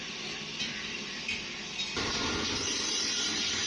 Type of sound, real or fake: real